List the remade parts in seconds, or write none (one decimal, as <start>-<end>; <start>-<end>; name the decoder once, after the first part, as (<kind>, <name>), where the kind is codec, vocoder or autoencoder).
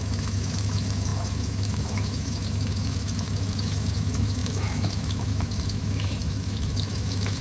0.0-7.4 (autoencoder, DAC-VAE)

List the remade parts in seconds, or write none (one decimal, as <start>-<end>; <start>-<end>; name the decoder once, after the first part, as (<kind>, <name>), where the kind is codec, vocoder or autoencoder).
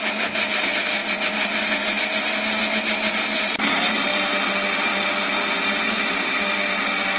none